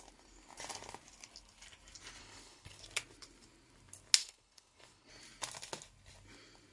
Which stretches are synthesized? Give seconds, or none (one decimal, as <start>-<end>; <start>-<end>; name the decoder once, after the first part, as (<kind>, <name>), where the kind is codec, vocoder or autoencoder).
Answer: 2.2-2.8 (codec, HILCodec); 4.2-5.1